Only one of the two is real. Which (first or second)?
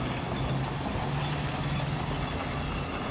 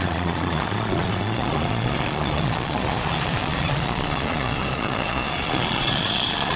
first